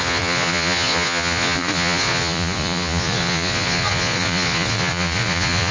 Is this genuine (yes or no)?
no